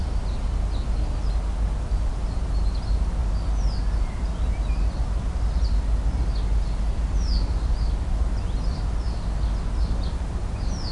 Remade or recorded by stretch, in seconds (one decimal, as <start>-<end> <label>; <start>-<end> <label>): 0.0-10.9 recorded

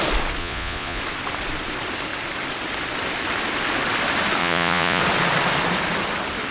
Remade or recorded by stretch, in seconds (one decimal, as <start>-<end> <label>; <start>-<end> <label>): 0.0-0.4 recorded; 0.4-1.0 remade; 1.0-4.4 recorded; 4.4-5.0 remade; 5.0-6.5 recorded

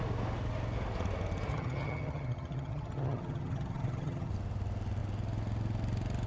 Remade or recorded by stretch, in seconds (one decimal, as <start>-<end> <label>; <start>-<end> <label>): 0.0-1.5 recorded; 1.5-4.3 remade; 4.3-6.3 recorded

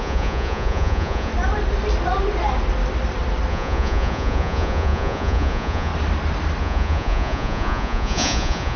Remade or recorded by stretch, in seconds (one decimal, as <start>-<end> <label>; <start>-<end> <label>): 0.0-1.3 remade; 1.3-3.5 recorded; 3.5-5.9 remade; 5.9-6.6 recorded; 6.6-8.8 remade

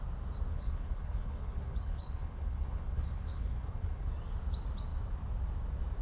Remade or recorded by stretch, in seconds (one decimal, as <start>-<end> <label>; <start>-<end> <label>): 0.0-0.5 recorded; 0.5-4.1 remade; 4.1-6.0 recorded